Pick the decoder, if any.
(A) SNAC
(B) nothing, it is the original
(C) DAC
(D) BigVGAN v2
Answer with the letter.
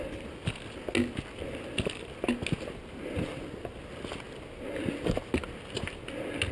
B